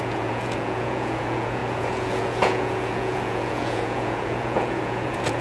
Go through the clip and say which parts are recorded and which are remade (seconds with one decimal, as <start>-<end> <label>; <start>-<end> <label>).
0.0-5.4 remade